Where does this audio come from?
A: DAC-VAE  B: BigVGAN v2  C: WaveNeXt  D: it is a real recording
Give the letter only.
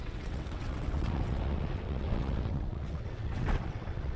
C